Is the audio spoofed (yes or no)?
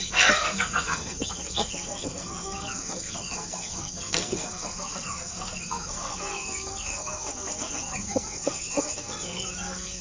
yes